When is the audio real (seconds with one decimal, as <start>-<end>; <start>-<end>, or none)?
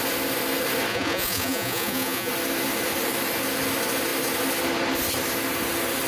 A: 0.0-0.9; 2.3-6.1